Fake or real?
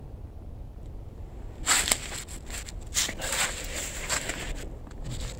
real